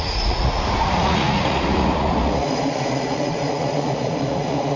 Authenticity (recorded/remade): remade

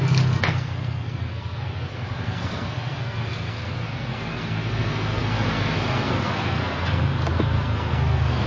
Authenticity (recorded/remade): remade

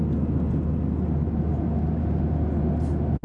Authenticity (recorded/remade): recorded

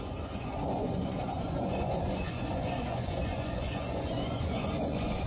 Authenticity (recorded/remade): remade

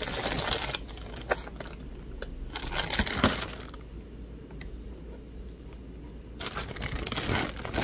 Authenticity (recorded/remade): recorded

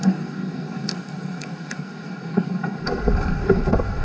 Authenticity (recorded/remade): remade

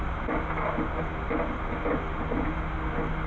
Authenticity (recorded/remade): recorded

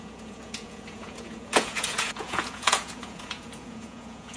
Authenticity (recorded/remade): remade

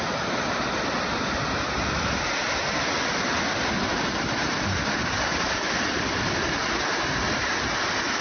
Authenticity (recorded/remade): recorded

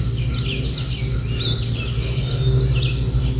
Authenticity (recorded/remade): recorded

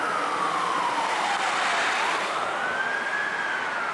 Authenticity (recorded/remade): recorded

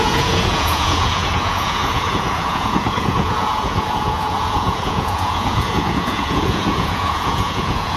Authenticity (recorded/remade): remade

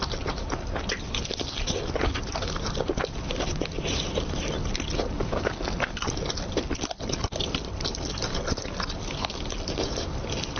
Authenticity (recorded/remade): recorded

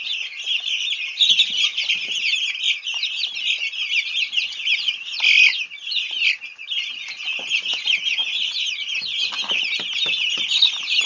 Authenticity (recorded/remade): recorded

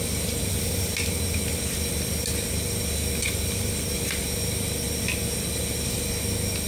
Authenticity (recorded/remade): recorded